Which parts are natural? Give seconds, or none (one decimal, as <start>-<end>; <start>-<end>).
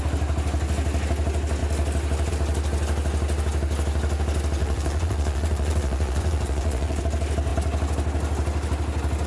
0.0-4.6; 7.0-9.3